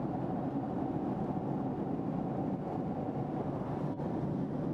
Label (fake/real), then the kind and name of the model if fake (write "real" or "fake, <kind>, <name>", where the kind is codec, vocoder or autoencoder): real